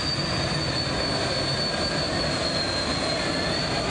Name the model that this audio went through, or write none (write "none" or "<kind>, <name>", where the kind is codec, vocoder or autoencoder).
none